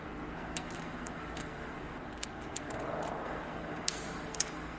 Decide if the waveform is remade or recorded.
remade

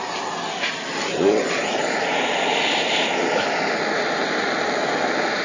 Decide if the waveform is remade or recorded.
recorded